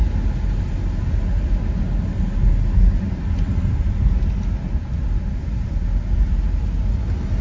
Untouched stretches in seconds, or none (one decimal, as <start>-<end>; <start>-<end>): 0.0-7.4